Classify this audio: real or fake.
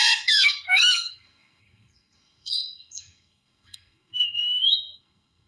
fake